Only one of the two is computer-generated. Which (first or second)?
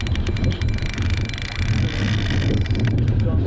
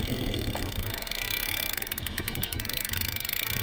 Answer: second